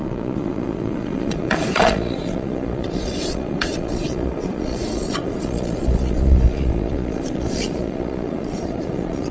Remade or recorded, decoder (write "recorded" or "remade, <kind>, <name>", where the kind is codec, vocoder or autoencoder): remade, vocoder, Vocos